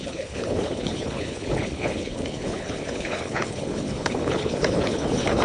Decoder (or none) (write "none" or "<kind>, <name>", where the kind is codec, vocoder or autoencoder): codec, HILCodec